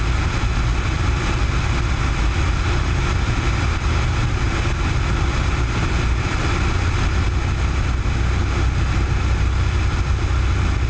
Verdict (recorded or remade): recorded